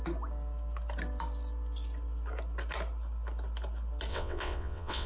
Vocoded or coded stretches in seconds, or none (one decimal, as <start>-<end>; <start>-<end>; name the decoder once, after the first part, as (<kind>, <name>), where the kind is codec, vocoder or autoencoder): 4.1-5.1 (vocoder, WaveNeXt)